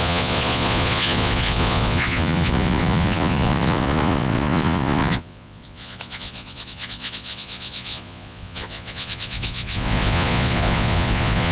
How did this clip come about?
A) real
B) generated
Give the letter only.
B